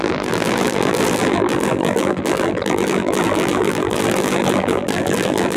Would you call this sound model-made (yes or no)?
yes